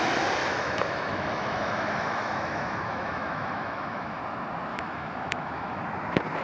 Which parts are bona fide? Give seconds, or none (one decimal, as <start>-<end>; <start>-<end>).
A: 0.0-0.4; 4.2-4.7; 5.8-6.4